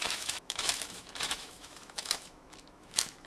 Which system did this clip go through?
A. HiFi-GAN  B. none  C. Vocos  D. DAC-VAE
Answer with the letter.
D